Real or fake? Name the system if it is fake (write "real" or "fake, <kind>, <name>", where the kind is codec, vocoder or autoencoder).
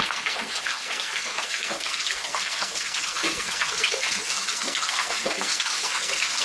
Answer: fake, codec, SNAC